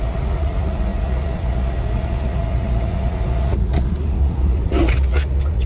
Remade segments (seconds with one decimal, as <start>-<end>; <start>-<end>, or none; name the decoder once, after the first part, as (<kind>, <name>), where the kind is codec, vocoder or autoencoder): 0.0-5.7 (vocoder, Vocos)